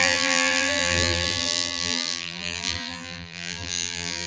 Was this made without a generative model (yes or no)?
no